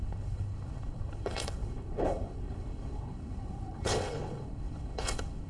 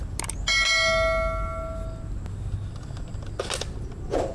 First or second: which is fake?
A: first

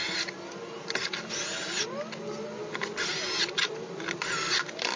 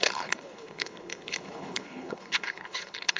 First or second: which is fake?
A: second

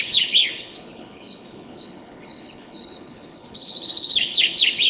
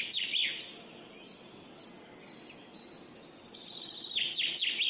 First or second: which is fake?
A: first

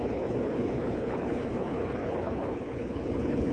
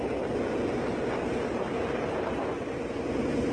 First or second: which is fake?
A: first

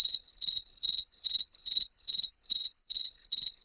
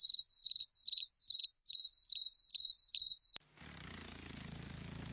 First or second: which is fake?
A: first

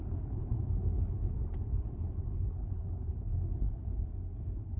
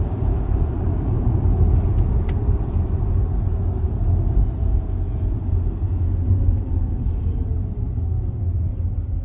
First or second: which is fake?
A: first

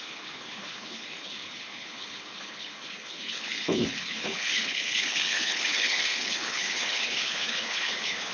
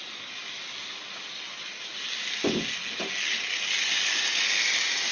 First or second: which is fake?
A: first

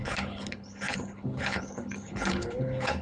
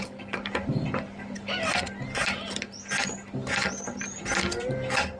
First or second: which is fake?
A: first